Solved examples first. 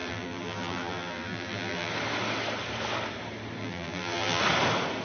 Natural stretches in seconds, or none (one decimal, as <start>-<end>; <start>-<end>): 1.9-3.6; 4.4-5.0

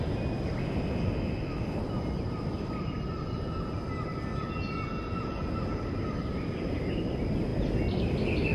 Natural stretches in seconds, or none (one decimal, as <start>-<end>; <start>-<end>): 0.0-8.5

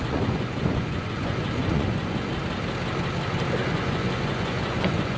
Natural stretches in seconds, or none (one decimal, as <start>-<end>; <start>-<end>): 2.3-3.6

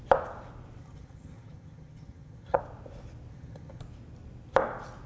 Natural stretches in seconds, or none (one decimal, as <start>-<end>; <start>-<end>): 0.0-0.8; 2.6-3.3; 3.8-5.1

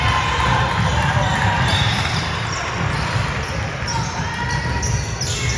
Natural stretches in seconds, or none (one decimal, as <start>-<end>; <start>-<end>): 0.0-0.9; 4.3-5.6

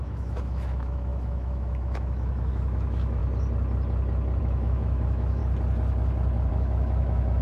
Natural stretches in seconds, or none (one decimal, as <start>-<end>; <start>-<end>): 3.2-4.4; 5.4-6.5